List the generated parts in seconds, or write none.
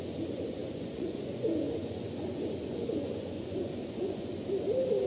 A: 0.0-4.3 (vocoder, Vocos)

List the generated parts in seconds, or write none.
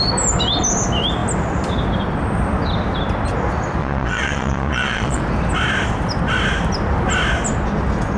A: 3.8-5.2 (vocoder, Vocos)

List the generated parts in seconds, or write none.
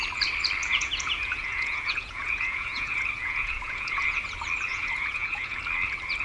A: 0.6-4.3 (vocoder, Vocos); 4.7-5.6